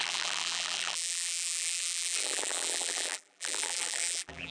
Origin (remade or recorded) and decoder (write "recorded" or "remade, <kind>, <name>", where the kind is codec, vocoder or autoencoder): remade, vocoder, BigVGAN v2